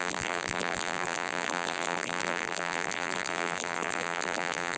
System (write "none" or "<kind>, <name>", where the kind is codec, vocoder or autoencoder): vocoder, BigVGAN v2